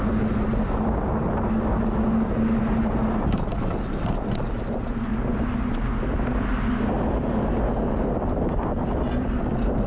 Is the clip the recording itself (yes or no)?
yes